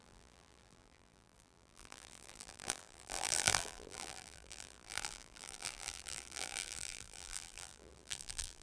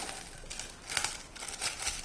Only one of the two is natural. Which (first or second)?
second